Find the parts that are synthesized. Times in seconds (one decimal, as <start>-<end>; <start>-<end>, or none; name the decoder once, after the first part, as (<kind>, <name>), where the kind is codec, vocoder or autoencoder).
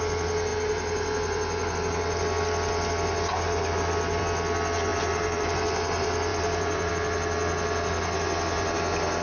4.9-5.5 (vocoder, BigVGAN v2); 6.3-6.9